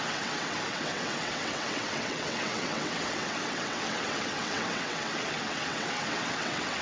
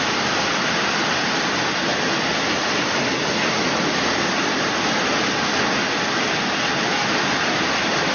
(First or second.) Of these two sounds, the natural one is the second